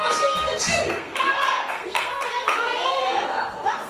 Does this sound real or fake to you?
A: fake